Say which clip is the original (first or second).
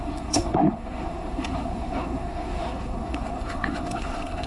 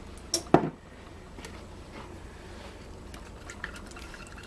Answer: second